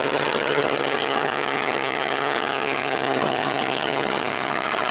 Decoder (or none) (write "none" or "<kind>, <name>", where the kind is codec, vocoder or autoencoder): vocoder, HiFi-GAN